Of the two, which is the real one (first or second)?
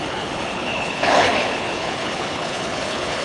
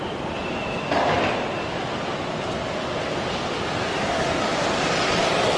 second